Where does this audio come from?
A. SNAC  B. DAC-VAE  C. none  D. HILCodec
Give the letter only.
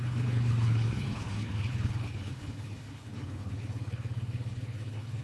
D